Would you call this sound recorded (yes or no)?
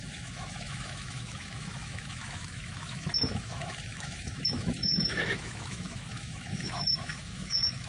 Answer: no